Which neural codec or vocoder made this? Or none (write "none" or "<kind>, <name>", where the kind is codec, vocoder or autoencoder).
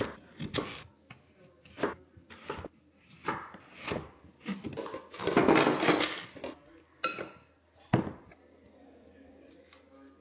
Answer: none